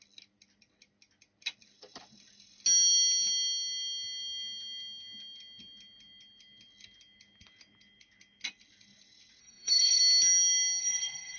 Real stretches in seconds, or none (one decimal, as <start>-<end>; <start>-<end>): 0.0-9.4; 10.0-10.8